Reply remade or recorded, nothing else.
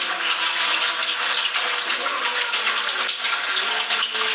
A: recorded